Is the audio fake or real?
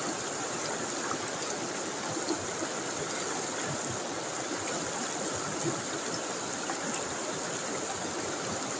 real